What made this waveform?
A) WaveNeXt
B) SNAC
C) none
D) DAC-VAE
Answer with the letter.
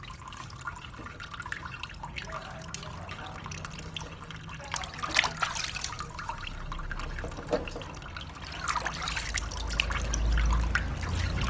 C